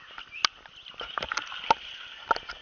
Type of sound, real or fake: real